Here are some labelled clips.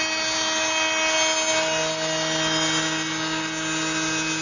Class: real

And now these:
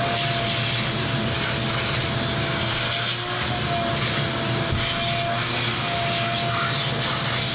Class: real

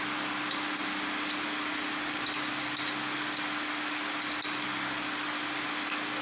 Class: real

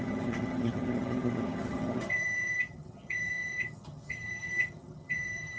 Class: fake